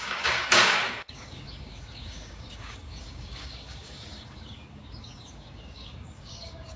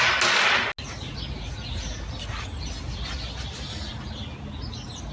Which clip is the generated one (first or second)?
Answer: first